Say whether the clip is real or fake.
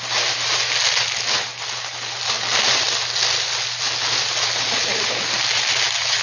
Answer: real